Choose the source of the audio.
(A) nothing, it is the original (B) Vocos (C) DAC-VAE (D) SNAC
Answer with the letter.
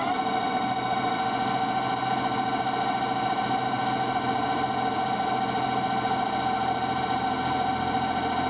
A